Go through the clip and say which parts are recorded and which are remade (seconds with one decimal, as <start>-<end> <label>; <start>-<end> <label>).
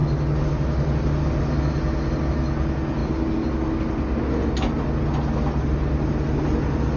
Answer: 0.0-7.0 recorded